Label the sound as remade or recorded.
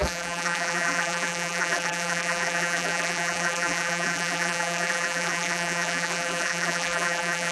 remade